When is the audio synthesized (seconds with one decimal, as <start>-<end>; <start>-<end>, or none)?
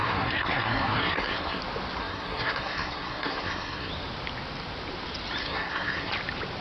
0.0-1.6; 2.0-3.9; 5.4-6.1